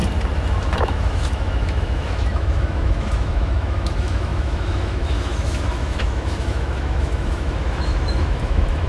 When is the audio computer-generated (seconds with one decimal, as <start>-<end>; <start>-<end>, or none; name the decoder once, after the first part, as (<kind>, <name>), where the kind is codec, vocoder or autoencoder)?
0.8-8.9 (autoencoder, DAC-VAE)